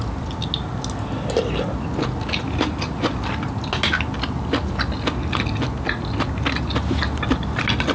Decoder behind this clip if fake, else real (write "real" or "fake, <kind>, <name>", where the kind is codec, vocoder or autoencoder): real